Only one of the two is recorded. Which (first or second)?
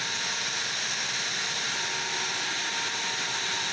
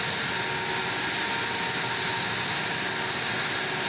second